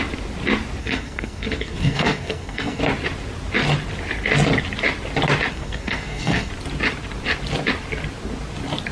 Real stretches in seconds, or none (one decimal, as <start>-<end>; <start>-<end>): 0.0-0.8; 2.8-5.5; 6.5-8.9